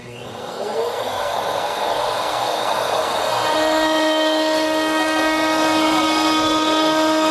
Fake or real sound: fake